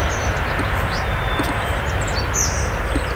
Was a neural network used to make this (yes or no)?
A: no